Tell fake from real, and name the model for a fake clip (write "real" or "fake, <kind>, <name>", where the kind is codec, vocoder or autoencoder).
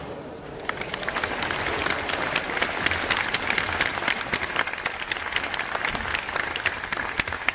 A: real